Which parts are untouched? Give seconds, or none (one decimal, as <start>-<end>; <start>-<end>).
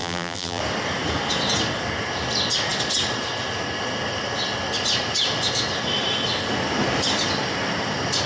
0.6-8.3